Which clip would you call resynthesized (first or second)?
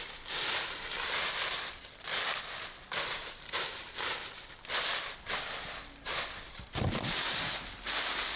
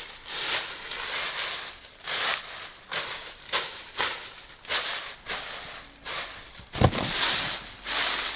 first